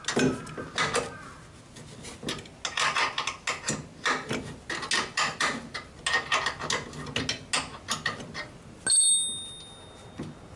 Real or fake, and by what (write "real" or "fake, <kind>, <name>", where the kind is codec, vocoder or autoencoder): real